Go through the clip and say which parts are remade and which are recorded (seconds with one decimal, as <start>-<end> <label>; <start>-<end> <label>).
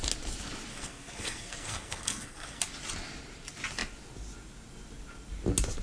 0.0-0.7 recorded; 0.7-2.6 remade; 2.6-5.8 recorded